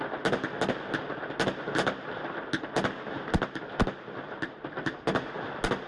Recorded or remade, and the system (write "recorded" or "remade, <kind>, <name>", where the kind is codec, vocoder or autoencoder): recorded